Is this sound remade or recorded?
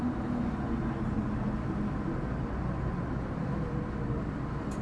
recorded